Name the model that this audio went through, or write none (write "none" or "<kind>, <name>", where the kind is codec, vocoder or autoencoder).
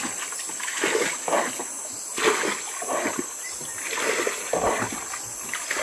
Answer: none